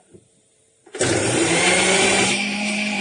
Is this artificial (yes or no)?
yes